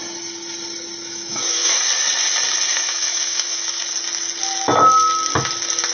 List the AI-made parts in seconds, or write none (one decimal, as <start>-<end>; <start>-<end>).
1.0-1.8; 2.7-3.8